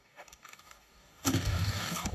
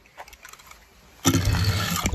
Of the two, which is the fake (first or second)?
first